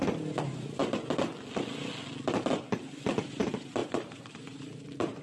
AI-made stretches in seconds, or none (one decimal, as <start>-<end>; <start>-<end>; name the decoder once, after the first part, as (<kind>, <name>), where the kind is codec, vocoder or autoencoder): 0.0-0.8 (vocoder, BigVGAN v2); 3.2-5.2